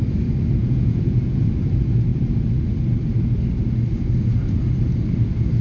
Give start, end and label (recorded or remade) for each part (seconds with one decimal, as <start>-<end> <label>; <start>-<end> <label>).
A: 0.0-0.6 recorded; 0.6-1.5 remade; 1.5-5.6 recorded